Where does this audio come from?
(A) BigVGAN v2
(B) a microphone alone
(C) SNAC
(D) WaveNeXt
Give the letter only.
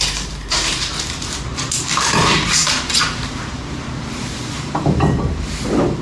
A